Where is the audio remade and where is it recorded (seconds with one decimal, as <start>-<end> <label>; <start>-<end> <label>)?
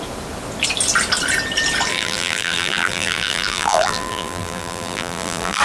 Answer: 0.0-1.9 recorded; 1.9-5.6 remade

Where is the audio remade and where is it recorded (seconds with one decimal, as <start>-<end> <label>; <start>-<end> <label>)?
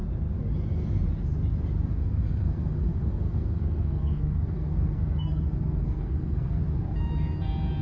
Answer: 0.0-1.9 recorded; 1.9-6.6 remade; 6.6-7.8 recorded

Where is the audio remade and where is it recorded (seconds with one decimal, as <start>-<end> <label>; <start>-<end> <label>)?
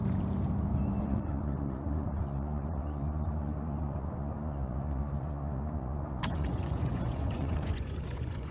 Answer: 0.0-1.0 recorded; 1.0-8.5 remade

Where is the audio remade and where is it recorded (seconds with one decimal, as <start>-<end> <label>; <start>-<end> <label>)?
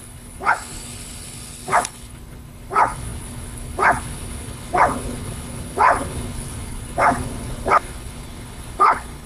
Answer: 0.0-9.3 remade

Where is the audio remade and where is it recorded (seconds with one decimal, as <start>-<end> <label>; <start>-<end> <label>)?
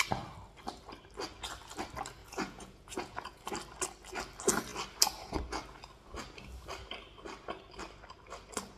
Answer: 0.0-2.2 recorded; 2.2-3.4 remade; 3.4-8.8 recorded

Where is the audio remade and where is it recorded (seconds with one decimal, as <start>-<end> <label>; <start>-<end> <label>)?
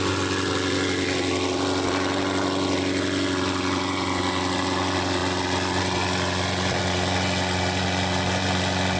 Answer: 0.0-9.0 recorded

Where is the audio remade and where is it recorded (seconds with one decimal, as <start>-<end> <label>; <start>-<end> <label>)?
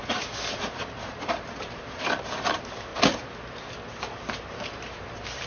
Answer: 0.0-0.8 recorded; 0.8-2.9 remade; 2.9-3.9 recorded; 3.9-5.5 remade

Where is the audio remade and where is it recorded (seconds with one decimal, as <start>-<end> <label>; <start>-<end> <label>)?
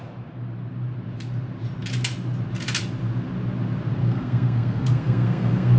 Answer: 0.0-4.0 recorded; 4.0-5.8 remade